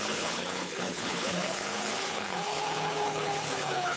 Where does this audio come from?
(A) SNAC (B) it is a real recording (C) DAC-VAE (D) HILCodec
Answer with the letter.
D